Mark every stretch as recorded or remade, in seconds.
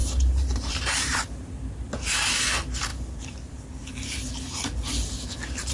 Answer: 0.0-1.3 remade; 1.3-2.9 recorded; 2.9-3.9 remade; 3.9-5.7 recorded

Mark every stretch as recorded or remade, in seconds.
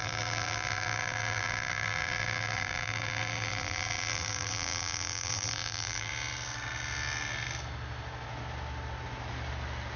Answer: 0.0-6.1 remade; 6.1-10.0 recorded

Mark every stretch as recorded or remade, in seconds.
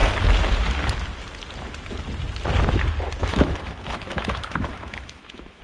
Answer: 0.0-3.2 recorded; 3.2-5.6 remade